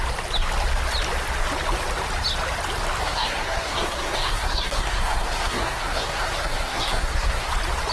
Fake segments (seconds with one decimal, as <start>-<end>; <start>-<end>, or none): 3.0-7.5